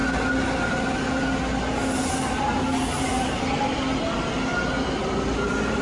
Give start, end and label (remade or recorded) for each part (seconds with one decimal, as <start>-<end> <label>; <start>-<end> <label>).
0.0-5.8 recorded